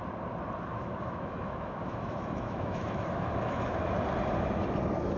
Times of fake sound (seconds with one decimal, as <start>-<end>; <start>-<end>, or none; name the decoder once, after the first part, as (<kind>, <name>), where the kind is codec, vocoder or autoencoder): 0.7-3.8 (autoencoder, DAC-VAE)